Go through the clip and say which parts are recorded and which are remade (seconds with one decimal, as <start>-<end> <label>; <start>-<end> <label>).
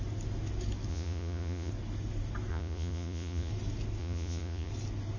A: 0.0-0.9 recorded; 0.9-1.7 remade; 1.7-2.5 recorded; 2.5-3.5 remade; 3.5-4.0 recorded; 4.0-4.7 remade; 4.7-5.2 recorded